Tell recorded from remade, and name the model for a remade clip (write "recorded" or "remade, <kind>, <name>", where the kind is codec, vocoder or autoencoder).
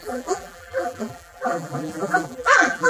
remade, vocoder, BigVGAN v2